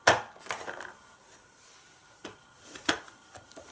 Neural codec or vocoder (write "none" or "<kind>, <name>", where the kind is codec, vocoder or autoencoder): none